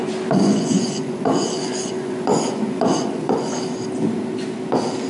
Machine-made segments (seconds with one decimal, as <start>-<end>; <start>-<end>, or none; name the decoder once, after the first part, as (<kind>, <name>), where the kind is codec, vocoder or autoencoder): 0.5-3.6 (vocoder, Vocos)